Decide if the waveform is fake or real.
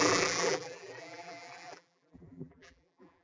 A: fake